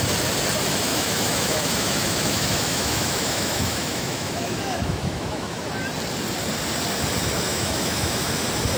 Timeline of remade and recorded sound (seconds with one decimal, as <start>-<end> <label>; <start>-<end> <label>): 0.0-0.9 recorded; 0.9-5.7 remade; 5.7-7.5 recorded; 7.5-8.3 remade; 8.3-8.8 recorded